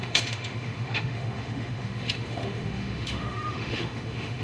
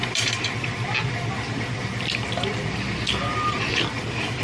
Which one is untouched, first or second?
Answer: second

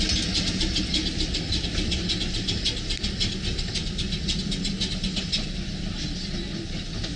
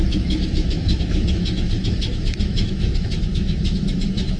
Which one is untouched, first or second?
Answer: first